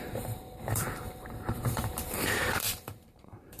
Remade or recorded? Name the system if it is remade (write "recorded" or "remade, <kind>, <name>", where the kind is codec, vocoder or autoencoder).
remade, vocoder, BigVGAN v2